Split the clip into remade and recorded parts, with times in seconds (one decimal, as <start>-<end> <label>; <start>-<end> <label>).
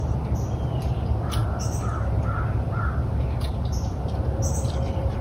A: 0.0-5.2 recorded